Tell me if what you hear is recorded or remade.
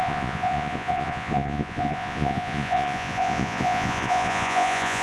remade